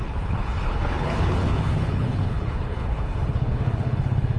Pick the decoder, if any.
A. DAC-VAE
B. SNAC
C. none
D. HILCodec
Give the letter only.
D